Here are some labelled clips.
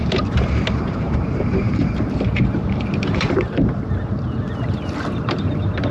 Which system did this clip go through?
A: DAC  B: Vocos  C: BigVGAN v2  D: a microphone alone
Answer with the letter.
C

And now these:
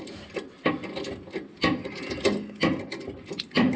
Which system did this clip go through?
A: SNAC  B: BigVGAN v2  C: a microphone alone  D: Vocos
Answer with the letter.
C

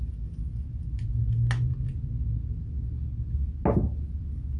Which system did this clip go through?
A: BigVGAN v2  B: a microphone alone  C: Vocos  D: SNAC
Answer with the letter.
B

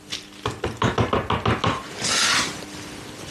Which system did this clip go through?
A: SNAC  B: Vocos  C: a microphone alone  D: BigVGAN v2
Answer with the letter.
C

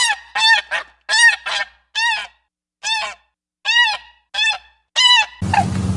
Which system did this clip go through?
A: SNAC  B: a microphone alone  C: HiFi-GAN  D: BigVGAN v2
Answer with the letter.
B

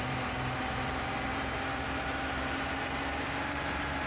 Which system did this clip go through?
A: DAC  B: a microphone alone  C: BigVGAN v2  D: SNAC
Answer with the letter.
C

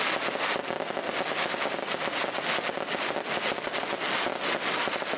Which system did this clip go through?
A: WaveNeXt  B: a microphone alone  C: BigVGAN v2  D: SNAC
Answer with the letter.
B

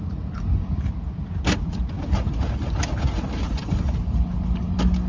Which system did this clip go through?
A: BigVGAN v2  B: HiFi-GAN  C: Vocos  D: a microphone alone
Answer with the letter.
D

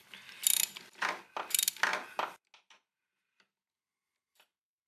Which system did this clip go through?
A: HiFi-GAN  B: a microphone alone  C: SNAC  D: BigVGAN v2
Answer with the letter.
B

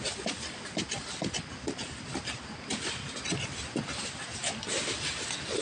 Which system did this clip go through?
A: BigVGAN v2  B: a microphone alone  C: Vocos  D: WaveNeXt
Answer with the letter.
B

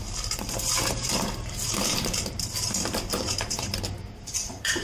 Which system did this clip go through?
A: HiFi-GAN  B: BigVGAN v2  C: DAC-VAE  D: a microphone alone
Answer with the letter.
B